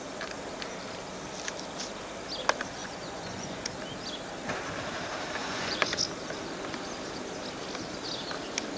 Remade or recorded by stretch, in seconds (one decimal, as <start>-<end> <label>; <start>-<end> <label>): 0.0-2.8 recorded; 2.8-3.7 remade; 3.7-5.4 recorded; 5.4-6.0 remade; 6.0-8.8 recorded